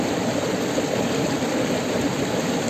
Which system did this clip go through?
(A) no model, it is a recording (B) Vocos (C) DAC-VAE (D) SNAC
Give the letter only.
A